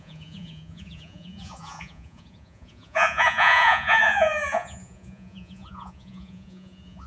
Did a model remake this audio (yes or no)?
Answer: yes